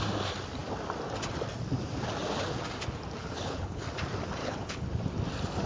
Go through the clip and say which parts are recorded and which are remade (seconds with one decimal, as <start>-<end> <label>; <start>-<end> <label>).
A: 0.0-3.2 recorded; 3.2-3.8 remade; 3.8-4.4 recorded; 4.4-4.9 remade; 4.9-5.7 recorded